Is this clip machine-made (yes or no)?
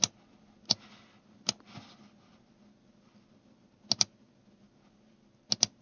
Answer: no